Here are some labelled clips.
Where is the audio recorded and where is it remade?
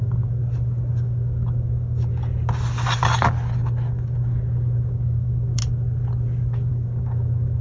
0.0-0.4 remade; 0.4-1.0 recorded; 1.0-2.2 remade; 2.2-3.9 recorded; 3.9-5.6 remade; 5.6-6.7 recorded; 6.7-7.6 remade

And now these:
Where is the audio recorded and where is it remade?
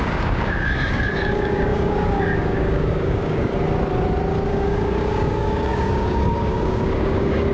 0.0-3.5 remade; 3.5-4.5 recorded; 4.5-7.5 remade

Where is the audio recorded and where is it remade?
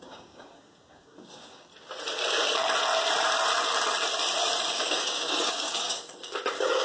0.0-1.7 remade; 1.7-4.7 recorded; 4.7-6.8 remade